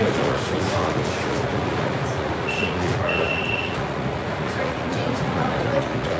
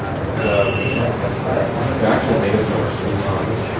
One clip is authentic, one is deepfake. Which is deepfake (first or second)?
first